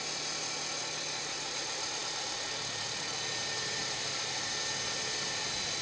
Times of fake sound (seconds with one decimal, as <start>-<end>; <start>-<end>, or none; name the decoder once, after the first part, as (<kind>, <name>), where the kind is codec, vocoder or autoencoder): none